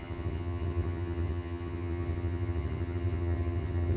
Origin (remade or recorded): remade